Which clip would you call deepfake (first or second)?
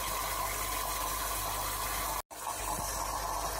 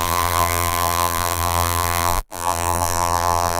second